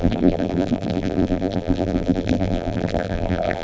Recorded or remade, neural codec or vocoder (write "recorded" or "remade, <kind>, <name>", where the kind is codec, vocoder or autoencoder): remade, vocoder, BigVGAN v2